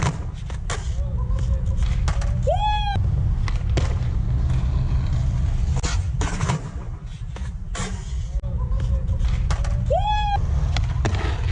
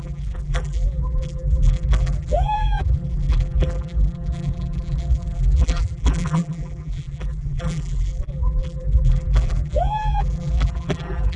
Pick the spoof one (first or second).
second